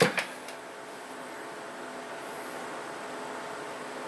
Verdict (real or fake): real